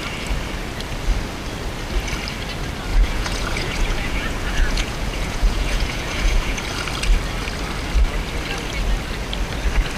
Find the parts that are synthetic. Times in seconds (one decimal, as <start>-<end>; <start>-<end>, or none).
2.9-6.6